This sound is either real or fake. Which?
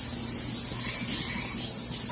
real